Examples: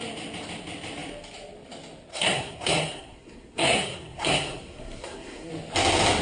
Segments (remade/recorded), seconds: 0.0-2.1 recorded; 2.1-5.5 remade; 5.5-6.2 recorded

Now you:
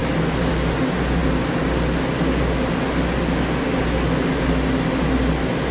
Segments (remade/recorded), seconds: 0.0-5.7 recorded

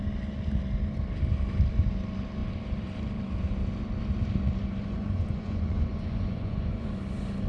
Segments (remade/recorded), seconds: 0.0-4.8 recorded; 4.8-6.9 remade; 6.9-7.5 recorded